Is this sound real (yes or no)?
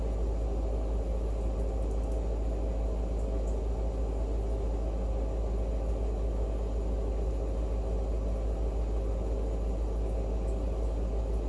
yes